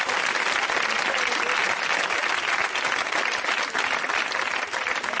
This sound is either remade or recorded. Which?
recorded